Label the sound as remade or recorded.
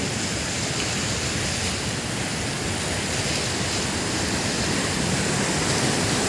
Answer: recorded